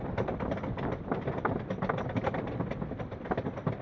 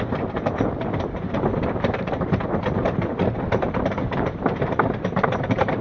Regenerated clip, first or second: second